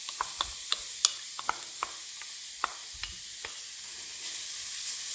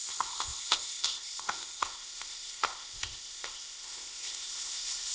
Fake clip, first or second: second